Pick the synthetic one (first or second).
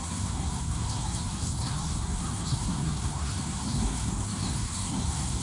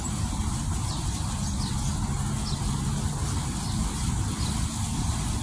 first